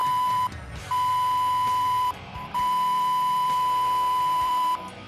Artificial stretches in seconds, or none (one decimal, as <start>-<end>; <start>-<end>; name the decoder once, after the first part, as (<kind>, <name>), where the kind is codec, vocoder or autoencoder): 0.0-5.1 (vocoder, BigVGAN v2)